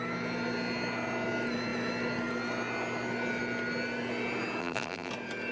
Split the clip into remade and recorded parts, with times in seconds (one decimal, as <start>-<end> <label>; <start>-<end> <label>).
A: 0.0-4.6 recorded; 4.6-5.1 remade; 5.1-5.5 recorded